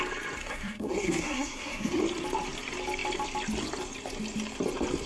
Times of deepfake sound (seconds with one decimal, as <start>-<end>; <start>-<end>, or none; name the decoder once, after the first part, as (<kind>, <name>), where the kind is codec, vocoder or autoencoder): 0.4-2.0 (codec, SNAC)